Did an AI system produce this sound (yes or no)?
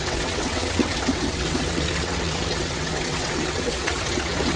yes